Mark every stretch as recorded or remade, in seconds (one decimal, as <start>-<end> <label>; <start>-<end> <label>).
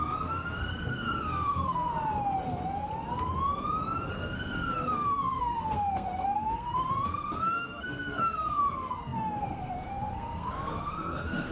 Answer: 0.0-1.9 remade; 1.9-4.1 recorded; 4.1-11.5 remade